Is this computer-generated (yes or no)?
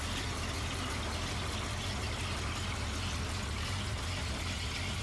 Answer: no